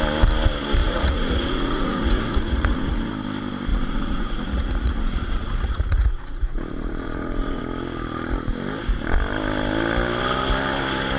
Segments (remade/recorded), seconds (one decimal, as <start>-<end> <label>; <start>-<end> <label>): 0.0-0.8 recorded; 0.8-3.1 remade; 3.1-3.7 recorded; 3.7-7.6 remade; 7.6-11.2 recorded